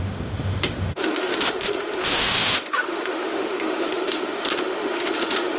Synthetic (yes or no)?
yes